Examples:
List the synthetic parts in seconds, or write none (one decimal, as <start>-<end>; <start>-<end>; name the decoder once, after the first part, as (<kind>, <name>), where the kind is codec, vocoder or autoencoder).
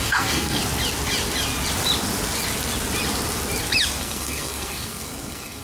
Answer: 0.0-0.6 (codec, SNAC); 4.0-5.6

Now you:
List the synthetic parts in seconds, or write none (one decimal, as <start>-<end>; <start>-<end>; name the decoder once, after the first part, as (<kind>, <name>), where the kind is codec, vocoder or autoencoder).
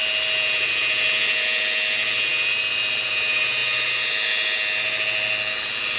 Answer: none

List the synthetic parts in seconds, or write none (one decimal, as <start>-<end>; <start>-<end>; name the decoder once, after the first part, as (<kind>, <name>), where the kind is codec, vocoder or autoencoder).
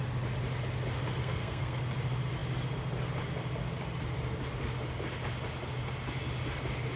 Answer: 1.2-1.8 (codec, SNAC)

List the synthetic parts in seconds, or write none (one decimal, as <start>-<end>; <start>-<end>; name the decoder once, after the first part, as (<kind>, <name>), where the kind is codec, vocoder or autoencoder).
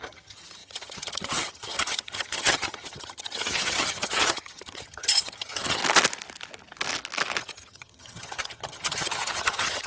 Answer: 0.0-5.8 (vocoder, HiFi-GAN); 7.4-9.9